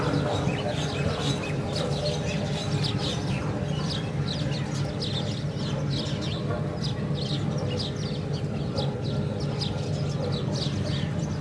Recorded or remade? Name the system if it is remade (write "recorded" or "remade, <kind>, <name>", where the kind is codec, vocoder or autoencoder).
recorded